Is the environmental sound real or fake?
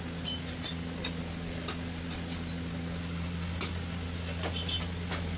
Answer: real